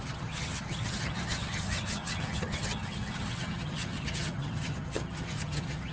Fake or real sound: fake